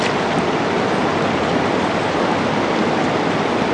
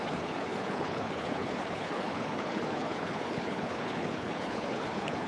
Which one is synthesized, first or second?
second